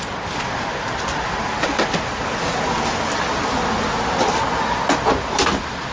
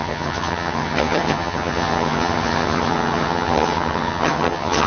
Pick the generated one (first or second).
second